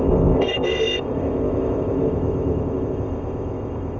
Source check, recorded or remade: remade